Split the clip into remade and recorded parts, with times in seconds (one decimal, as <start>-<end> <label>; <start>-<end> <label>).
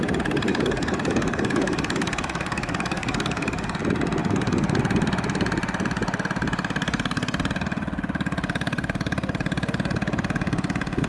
0.0-0.5 recorded; 0.5-3.8 remade; 3.8-4.2 recorded; 4.2-4.8 remade; 4.8-11.1 recorded